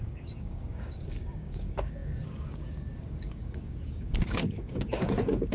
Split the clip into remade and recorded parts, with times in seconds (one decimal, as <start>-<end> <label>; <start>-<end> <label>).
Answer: 0.0-5.5 remade